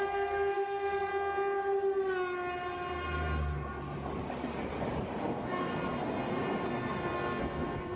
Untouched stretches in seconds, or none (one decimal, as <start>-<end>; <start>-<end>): 1.1-5.2; 5.7-6.7